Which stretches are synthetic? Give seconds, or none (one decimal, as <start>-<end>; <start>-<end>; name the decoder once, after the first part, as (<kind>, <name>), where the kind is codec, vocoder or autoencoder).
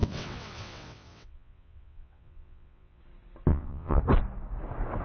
0.0-3.0 (vocoder, WaveNeXt); 3.5-4.0